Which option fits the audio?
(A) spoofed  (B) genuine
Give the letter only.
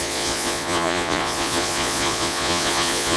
A